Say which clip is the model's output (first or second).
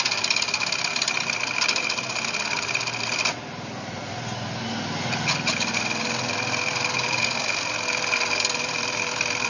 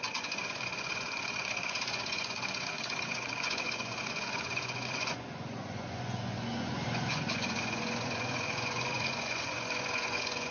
second